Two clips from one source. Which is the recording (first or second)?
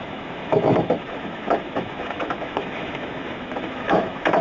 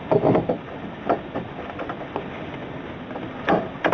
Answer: second